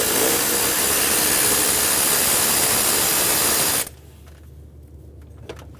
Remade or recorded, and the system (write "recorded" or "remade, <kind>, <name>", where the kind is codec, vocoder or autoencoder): recorded